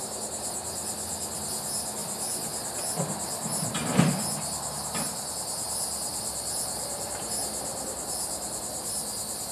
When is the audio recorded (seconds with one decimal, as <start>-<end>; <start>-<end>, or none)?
0.0-6.1; 7.3-7.7; 8.6-9.5